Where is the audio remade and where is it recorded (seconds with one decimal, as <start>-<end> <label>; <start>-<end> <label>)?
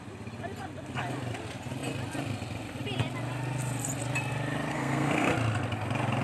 0.0-4.7 recorded; 4.7-5.3 remade; 5.3-6.2 recorded